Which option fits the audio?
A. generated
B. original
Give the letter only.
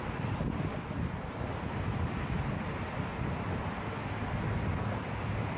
A